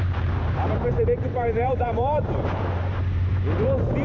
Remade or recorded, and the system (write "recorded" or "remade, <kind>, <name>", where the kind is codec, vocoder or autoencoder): remade, vocoder, BigVGAN v2